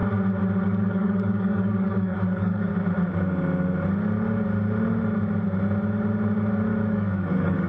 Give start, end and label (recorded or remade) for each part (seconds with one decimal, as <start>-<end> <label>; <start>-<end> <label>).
0.0-0.7 recorded; 0.7-2.7 remade; 2.7-6.9 recorded; 6.9-7.7 remade

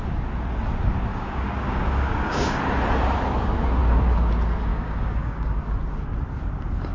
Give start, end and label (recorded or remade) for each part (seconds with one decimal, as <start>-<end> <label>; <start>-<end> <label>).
0.0-1.1 recorded; 1.1-2.6 remade; 2.6-4.7 recorded; 4.7-5.6 remade; 5.6-6.9 recorded